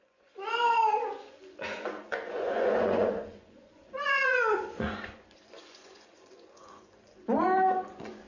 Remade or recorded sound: remade